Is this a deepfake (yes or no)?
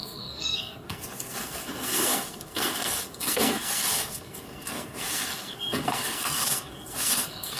yes